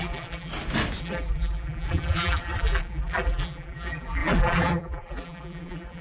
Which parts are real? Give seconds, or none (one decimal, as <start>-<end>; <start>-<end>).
0.5-1.0